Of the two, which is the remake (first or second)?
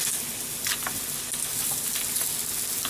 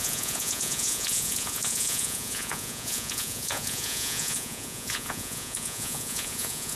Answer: second